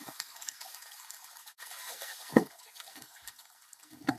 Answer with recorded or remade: remade